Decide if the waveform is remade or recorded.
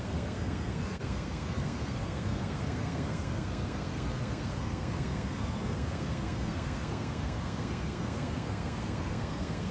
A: remade